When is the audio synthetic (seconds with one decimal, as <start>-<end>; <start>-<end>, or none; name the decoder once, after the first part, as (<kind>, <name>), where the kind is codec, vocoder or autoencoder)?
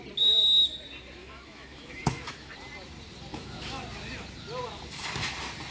1.2-2.5 (autoencoder, DAC-VAE); 3.3-3.8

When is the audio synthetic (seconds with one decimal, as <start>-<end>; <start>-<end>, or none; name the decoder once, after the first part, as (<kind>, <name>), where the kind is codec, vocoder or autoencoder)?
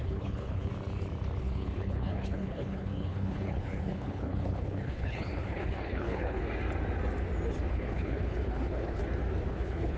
0.0-0.7 (codec, HILCodec); 1.4-6.4; 7.7-9.0; 9.5-10.0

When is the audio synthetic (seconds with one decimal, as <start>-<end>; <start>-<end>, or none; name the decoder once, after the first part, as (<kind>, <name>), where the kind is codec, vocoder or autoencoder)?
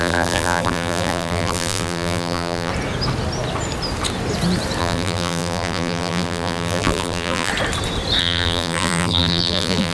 0.0-2.7 (vocoder, BigVGAN v2); 4.8-7.5; 8.2-9.9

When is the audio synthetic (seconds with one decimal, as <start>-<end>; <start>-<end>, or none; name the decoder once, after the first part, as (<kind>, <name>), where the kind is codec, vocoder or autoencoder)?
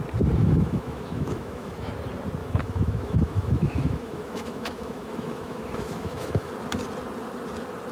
0.4-1.9 (autoencoder, DAC-VAE); 2.4-6.5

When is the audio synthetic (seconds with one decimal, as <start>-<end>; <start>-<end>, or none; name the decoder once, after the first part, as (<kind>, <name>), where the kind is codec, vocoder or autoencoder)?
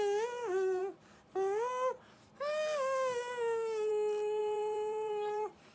4.4-5.7 (vocoder, BigVGAN v2)